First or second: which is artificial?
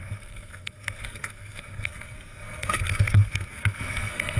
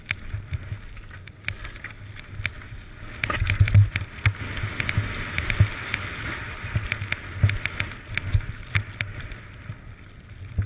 first